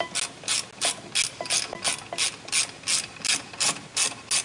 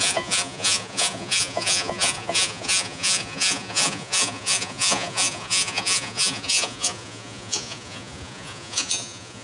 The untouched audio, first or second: first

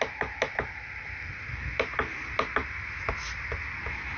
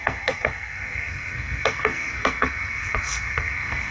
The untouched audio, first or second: first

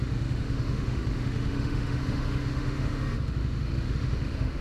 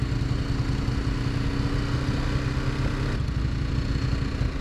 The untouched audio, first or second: second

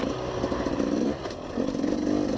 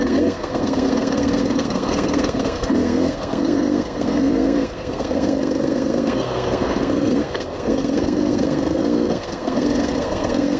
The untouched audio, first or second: first